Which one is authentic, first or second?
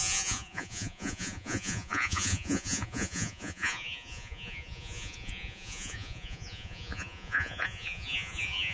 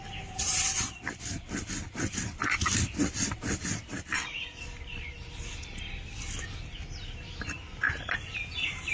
second